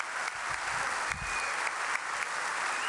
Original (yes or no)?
yes